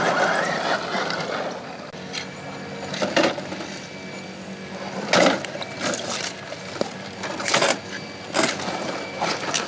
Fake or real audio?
real